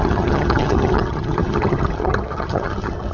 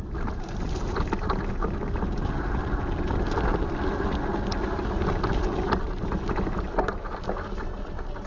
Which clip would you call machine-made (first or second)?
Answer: first